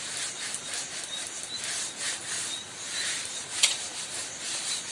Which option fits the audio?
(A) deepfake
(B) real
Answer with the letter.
B